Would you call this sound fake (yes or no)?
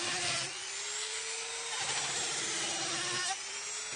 no